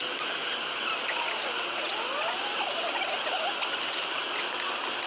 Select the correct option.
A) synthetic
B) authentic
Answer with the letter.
B